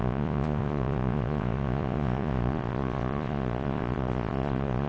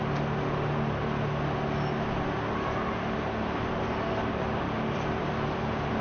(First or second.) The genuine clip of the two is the second